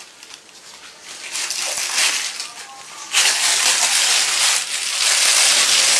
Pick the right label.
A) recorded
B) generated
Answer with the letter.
A